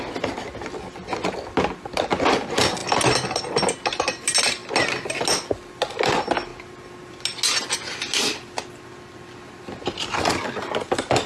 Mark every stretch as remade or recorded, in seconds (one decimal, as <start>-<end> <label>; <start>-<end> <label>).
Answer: 0.0-11.3 recorded